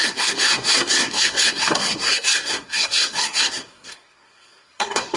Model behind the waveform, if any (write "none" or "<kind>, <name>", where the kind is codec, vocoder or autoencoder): codec, SNAC